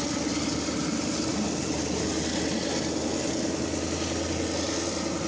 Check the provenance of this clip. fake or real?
real